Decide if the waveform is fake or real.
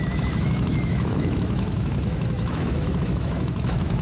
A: fake